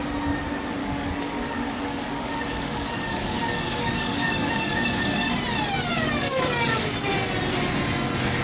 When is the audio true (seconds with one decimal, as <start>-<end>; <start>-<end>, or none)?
0.0-0.8; 5.4-5.9; 7.1-8.4